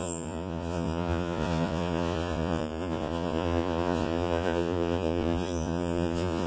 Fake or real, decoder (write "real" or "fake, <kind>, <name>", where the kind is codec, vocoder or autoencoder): fake, vocoder, Vocos